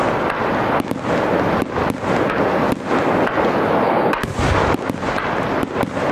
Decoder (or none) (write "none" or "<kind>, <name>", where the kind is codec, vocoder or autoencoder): none